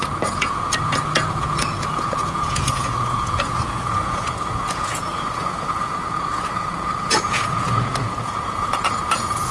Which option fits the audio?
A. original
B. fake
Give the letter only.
B